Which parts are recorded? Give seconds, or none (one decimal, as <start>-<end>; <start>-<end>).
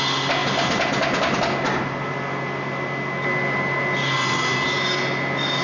0.0-5.6